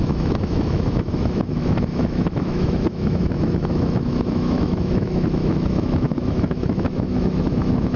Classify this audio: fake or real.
fake